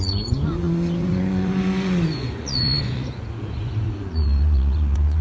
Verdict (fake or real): fake